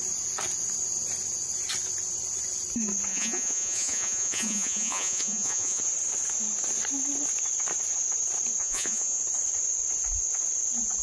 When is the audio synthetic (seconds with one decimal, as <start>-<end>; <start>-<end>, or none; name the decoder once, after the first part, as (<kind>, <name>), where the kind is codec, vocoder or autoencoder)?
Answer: 3.1-5.8 (vocoder, Vocos); 8.6-9.2